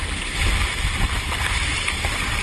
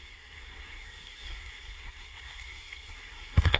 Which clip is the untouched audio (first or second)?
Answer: first